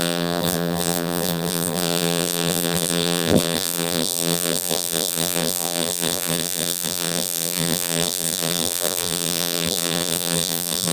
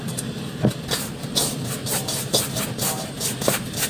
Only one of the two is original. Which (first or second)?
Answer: second